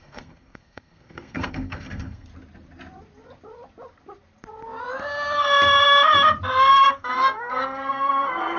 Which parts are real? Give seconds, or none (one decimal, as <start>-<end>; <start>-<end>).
2.3-6.7